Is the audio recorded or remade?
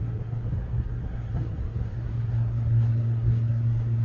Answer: remade